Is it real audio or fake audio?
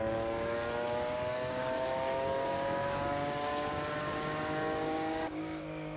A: fake